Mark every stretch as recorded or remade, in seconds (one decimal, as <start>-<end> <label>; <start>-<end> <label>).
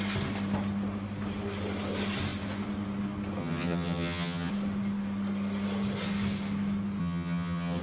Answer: 0.0-3.4 recorded; 3.4-4.5 remade; 4.5-7.0 recorded; 7.0-7.8 remade